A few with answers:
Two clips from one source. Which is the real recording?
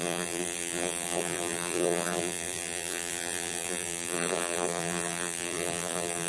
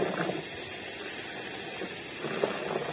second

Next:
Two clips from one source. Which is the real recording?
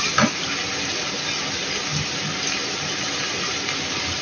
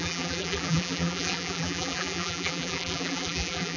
first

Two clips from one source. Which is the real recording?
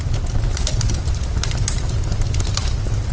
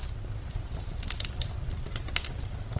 first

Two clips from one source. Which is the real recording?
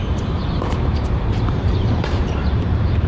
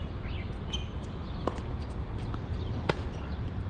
second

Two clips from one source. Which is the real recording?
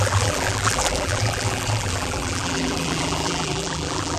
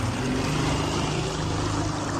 second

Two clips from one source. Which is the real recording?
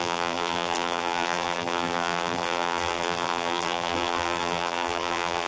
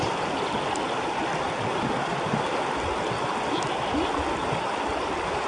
second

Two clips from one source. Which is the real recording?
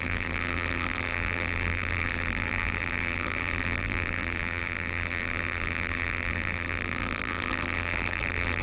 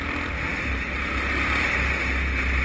second